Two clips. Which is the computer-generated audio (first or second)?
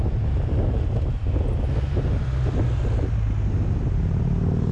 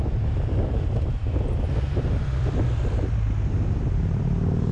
second